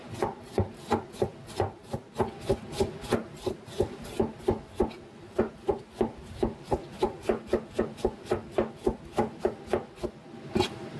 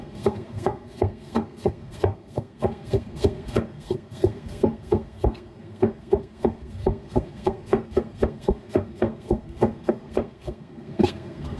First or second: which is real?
first